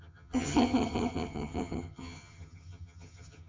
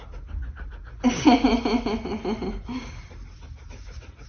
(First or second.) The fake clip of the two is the first